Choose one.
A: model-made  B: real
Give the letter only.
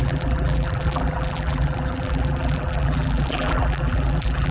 A